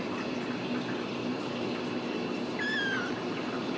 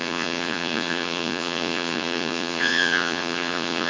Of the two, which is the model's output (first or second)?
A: second